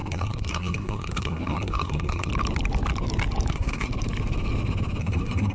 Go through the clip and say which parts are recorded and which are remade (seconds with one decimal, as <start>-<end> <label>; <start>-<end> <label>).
0.0-2.3 remade; 2.3-3.5 recorded; 3.5-3.9 remade; 3.9-5.0 recorded; 5.0-5.5 remade